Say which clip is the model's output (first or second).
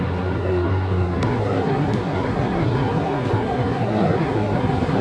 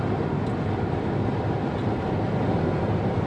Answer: first